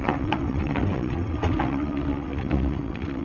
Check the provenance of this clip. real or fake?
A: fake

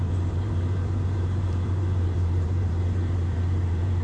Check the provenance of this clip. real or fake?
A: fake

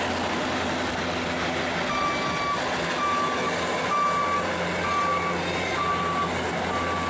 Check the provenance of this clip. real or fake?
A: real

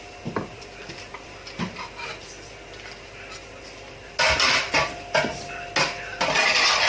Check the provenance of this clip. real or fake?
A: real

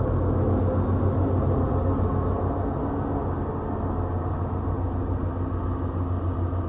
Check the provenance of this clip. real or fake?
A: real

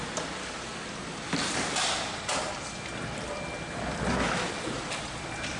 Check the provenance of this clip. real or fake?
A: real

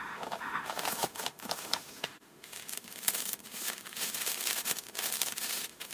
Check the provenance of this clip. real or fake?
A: fake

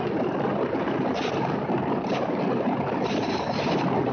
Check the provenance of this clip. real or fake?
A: fake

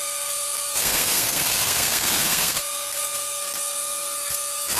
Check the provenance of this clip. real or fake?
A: fake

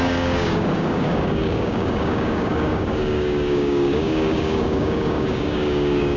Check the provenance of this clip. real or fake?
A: fake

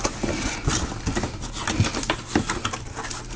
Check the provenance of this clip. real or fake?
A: real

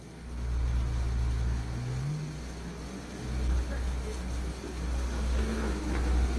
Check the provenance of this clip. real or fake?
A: real